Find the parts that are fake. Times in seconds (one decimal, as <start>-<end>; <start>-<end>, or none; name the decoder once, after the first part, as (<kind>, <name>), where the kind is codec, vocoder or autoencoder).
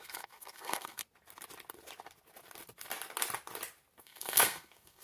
0.0-1.0 (codec, SNAC); 4.0-5.0